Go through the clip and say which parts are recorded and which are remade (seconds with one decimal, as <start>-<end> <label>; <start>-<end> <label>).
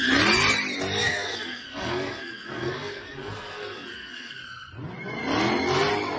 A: 0.0-1.0 recorded; 1.0-4.7 remade; 4.7-6.2 recorded